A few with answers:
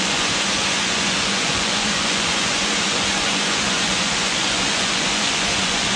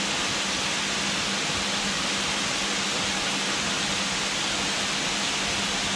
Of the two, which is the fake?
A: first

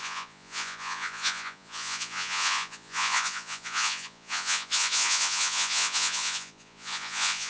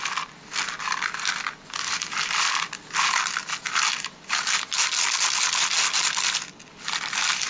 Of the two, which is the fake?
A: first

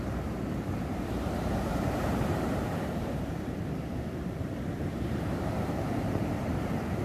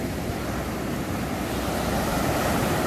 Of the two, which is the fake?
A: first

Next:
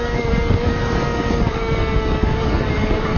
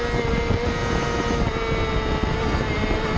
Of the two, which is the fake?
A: first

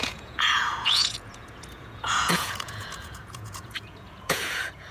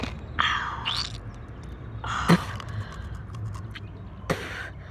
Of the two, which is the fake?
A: first